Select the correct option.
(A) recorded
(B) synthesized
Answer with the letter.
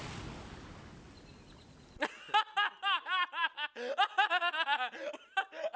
A